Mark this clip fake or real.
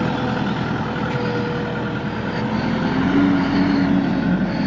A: real